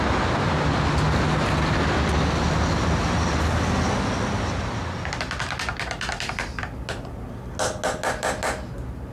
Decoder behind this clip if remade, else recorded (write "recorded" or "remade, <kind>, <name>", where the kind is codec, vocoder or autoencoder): recorded